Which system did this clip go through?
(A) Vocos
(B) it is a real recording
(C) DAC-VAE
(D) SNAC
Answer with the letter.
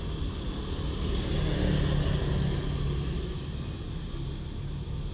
B